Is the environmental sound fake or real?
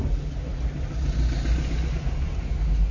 real